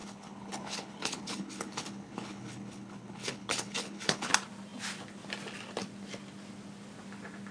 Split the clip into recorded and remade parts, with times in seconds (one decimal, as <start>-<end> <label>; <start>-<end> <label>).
0.0-4.3 remade; 4.3-7.5 recorded